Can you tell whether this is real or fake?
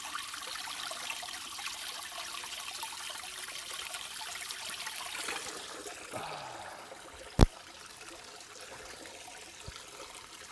real